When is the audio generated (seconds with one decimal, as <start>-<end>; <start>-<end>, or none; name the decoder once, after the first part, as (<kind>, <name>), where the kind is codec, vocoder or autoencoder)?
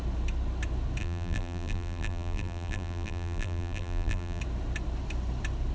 1.0-4.4 (vocoder, BigVGAN v2)